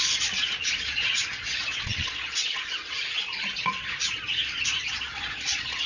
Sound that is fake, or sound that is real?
fake